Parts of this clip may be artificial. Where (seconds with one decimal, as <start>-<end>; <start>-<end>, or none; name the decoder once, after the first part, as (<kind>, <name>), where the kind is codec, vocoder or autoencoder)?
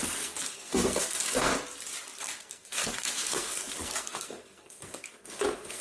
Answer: 0.0-1.5 (codec, SNAC); 2.2-5.8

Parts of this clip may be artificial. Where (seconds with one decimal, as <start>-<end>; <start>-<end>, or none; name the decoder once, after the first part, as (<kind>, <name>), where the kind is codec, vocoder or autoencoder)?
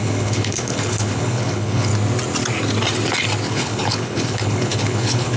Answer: 0.0-1.9 (codec, HILCodec); 3.5-5.4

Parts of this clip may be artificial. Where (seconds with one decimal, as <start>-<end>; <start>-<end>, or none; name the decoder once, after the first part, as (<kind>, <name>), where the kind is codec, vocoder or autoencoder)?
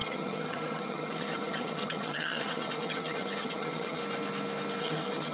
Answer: 0.0-4.0 (vocoder, HiFi-GAN); 4.8-5.3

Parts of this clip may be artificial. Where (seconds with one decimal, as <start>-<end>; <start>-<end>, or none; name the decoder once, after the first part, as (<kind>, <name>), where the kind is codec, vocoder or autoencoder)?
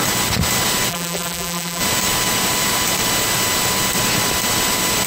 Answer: 0.9-1.8 (vocoder, BigVGAN v2)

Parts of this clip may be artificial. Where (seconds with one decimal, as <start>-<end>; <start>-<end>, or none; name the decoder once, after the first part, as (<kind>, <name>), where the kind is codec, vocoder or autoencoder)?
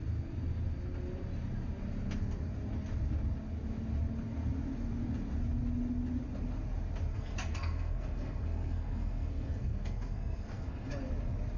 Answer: 7.1-10.9 (codec, SNAC)